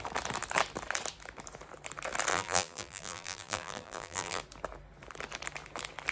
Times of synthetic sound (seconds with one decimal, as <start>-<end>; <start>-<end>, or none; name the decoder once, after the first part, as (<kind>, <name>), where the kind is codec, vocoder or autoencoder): 2.3-4.4 (vocoder, BigVGAN v2)